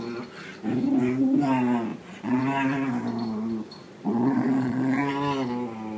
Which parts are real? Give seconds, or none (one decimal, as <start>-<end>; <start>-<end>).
0.0-1.9; 2.4-3.8; 5.1-6.0